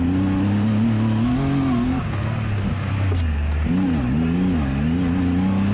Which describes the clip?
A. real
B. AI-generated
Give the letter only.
A